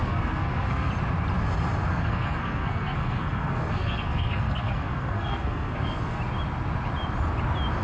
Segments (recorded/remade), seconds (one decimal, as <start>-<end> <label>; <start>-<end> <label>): 0.0-0.9 remade; 0.9-1.9 recorded; 1.9-6.2 remade; 6.2-7.8 recorded